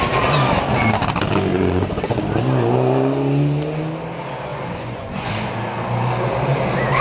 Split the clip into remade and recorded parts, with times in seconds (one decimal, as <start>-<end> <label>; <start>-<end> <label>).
0.0-1.5 recorded; 1.5-2.2 remade; 2.2-4.5 recorded; 4.5-5.5 remade; 5.5-7.0 recorded